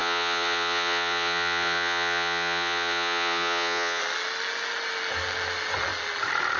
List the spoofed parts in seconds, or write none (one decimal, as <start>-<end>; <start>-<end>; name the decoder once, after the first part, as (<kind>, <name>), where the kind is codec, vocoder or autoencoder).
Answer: 0.0-4.0 (vocoder, Vocos)